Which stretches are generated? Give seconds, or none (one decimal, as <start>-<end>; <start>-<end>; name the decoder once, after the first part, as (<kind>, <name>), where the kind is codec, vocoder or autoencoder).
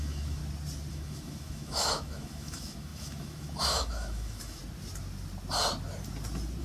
0.0-0.4 (autoencoder, DAC-VAE); 0.9-4.6